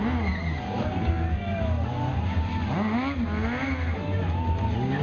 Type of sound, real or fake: real